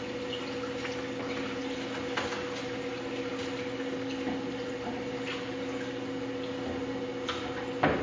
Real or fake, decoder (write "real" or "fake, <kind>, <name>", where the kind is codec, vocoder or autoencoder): real